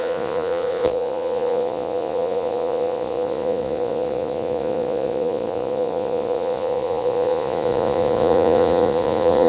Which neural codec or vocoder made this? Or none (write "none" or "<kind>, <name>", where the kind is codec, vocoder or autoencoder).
vocoder, Vocos